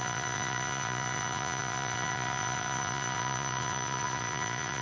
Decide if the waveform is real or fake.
fake